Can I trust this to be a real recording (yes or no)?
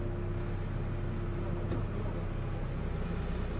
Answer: yes